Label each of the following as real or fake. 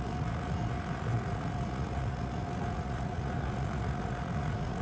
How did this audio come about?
fake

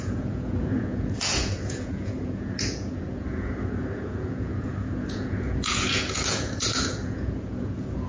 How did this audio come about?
fake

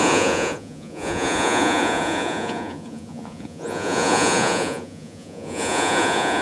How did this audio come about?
fake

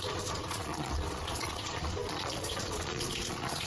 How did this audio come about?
fake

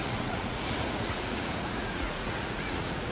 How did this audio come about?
fake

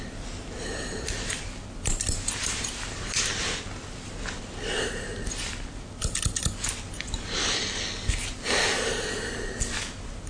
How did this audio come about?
real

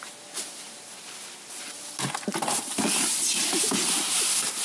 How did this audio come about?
real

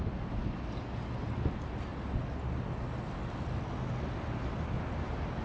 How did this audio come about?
real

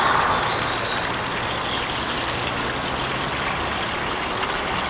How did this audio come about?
real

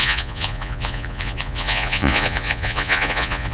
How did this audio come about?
fake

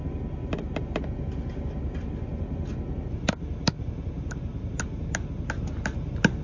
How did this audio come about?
real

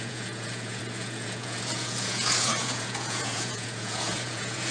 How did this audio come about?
fake